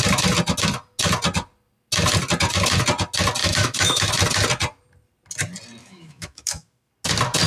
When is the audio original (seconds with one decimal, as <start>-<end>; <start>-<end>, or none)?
0.0-3.4; 4.1-5.8; 6.9-7.5